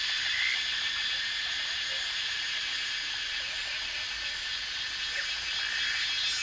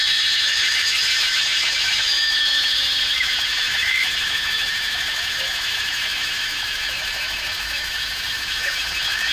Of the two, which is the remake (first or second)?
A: second